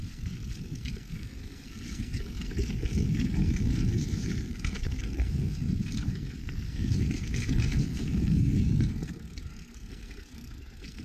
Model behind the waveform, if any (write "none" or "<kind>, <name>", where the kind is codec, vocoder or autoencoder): codec, SNAC